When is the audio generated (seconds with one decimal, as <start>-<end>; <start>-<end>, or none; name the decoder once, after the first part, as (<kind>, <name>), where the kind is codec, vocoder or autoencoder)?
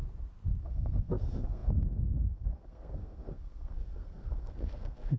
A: 0.6-5.2 (codec, SNAC)